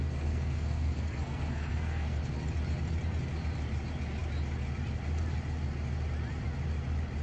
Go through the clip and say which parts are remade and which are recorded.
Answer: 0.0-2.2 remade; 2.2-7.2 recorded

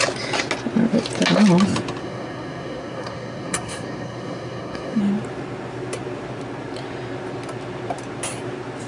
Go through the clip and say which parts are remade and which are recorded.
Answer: 0.0-2.0 recorded; 2.0-5.0 remade; 5.0-8.9 recorded